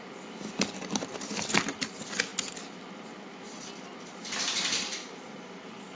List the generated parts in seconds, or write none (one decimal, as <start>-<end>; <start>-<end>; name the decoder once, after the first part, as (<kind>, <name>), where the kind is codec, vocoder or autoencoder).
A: 0.0-6.0 (vocoder, BigVGAN v2)